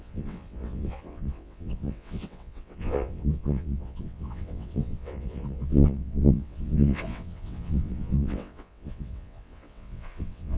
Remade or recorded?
remade